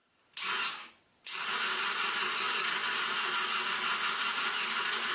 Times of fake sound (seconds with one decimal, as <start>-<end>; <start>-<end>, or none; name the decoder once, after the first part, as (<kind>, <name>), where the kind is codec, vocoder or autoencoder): none